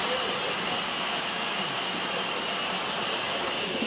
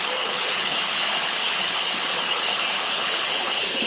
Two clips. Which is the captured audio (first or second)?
first